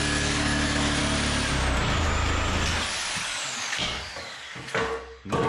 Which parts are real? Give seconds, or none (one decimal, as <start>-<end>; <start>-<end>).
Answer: 1.0-3.2